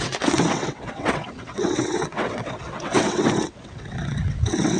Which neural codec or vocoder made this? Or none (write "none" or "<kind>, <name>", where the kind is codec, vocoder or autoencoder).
vocoder, WaveNeXt